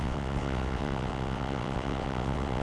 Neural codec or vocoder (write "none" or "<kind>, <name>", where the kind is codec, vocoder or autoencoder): vocoder, WaveNeXt